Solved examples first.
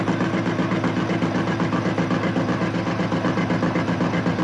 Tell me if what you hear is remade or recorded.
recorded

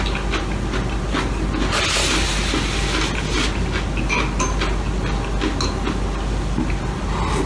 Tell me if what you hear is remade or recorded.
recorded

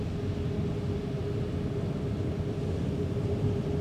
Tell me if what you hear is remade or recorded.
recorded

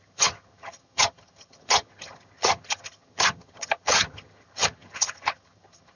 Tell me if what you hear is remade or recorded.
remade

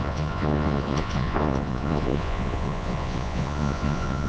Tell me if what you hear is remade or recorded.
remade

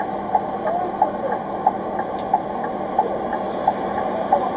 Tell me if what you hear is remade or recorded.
recorded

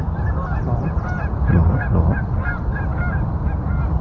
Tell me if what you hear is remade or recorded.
recorded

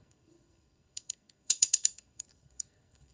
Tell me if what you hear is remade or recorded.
remade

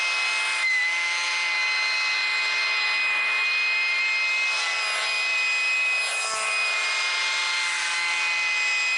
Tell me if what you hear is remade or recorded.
recorded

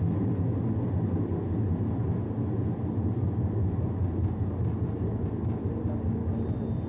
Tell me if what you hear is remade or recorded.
recorded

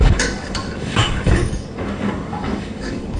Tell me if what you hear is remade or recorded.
remade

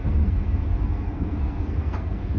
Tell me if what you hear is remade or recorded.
remade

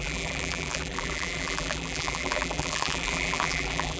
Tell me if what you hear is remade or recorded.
remade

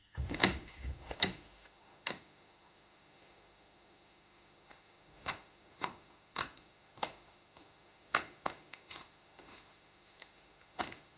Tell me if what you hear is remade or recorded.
remade